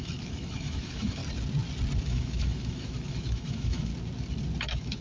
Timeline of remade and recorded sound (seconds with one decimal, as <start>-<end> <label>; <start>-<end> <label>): 0.0-1.2 remade; 1.2-2.0 recorded; 2.0-3.9 remade; 3.9-4.6 recorded; 4.6-5.0 remade